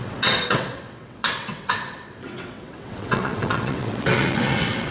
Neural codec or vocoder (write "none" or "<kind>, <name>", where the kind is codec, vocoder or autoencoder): vocoder, WaveNeXt